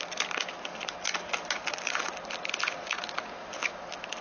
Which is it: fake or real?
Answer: real